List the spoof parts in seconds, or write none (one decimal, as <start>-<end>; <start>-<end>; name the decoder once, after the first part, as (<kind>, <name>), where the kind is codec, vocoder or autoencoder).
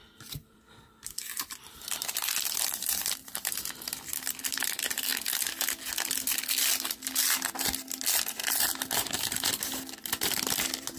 0.0-3.3 (vocoder, BigVGAN v2); 8.4-10.2